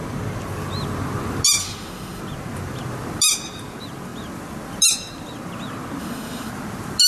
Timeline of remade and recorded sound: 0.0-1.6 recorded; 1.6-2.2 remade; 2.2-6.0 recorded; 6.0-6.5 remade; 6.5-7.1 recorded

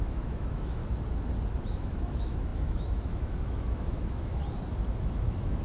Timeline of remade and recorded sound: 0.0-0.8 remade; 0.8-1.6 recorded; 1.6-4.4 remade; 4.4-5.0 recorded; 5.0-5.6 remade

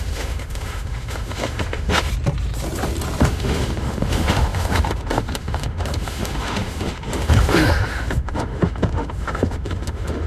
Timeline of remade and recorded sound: 0.0-2.1 remade; 2.1-3.2 recorded; 3.2-10.3 remade

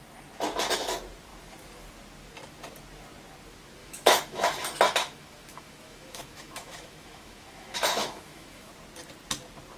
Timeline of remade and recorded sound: 0.0-3.8 recorded; 3.8-8.7 remade; 8.7-9.8 recorded

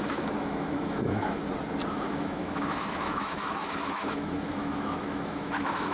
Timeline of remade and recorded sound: 0.0-1.4 remade; 1.4-1.9 recorded; 1.9-5.9 remade

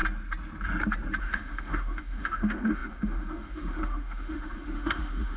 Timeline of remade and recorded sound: 0.0-1.2 recorded; 1.2-5.4 remade